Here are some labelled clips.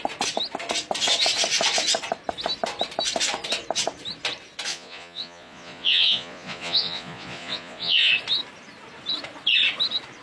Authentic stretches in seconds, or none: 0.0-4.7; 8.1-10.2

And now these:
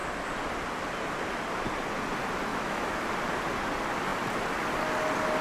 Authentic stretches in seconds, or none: 0.0-2.5; 3.0-5.4

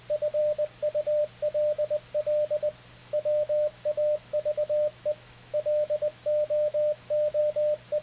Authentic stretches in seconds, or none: 0.0-3.0; 7.4-8.0

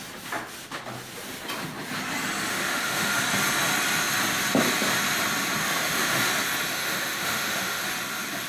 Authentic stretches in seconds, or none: 0.0-2.5; 3.1-5.6; 6.2-6.7; 7.8-8.5

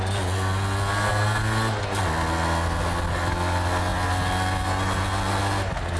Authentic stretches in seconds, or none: 0.0-6.0

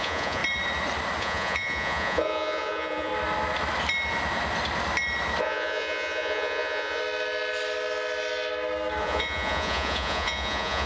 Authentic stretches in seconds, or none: 0.4-1.2; 3.1-5.4; 7.0-9.0

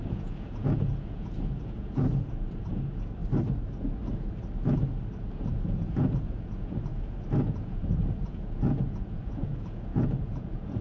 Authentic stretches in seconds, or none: 3.2-5.5; 6.9-7.5

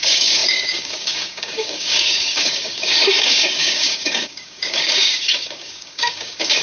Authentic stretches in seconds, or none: none